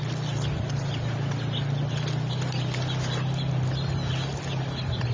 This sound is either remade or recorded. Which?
recorded